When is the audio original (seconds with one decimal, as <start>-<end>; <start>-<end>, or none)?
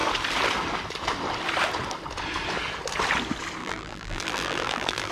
0.0-3.6